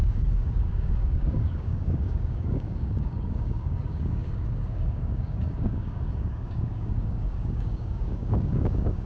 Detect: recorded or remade remade